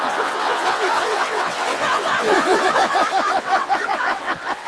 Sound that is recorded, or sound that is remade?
remade